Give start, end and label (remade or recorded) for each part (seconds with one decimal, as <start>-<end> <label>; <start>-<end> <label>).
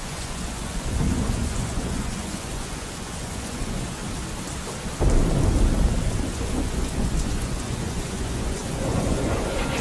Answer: 0.0-4.0 remade; 4.0-6.3 recorded; 6.3-9.8 remade